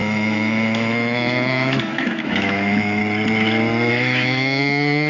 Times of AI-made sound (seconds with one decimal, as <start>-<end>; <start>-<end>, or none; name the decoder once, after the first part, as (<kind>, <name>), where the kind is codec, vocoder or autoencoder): 0.0-3.0 (autoencoder, DAC-VAE); 3.9-5.1

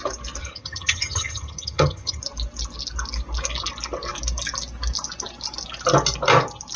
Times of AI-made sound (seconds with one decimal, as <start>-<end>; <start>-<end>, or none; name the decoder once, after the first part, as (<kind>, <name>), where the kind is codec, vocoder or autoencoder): 0.4-2.2 (vocoder, HiFi-GAN)

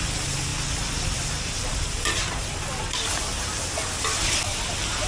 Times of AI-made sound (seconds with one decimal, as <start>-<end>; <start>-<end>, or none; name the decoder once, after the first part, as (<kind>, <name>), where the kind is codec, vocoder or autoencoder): none

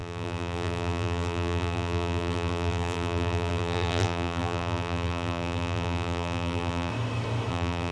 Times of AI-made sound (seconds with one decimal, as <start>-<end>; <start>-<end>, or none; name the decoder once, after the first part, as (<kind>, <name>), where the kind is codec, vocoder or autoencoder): 0.0-6.9 (vocoder, BigVGAN v2); 7.5-7.9